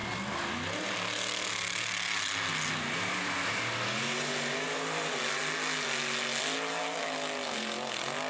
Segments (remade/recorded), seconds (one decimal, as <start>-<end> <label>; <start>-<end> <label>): 0.0-8.3 recorded